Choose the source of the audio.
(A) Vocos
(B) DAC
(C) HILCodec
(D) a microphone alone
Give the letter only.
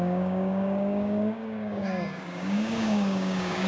B